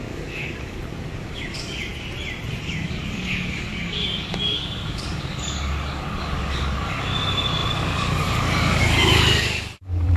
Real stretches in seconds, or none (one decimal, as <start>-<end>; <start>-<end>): 1.9-2.6